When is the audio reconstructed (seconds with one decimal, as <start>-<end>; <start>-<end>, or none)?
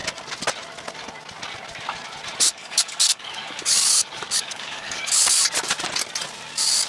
2.6-5.4